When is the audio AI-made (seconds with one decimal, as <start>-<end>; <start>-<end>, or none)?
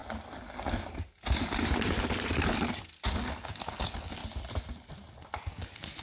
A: 3.4-4.2; 5.5-6.0